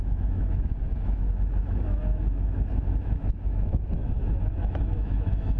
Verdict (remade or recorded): remade